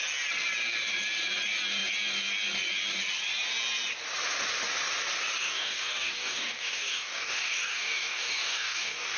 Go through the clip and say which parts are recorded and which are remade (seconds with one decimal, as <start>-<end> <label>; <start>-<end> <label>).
0.0-5.4 recorded; 5.4-9.2 remade